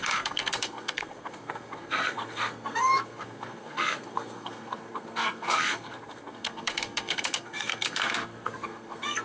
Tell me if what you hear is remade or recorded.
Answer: remade